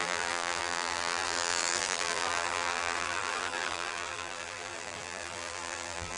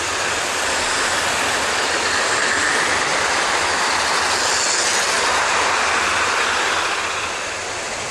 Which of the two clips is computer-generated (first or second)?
first